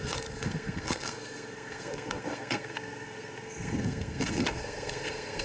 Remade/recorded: remade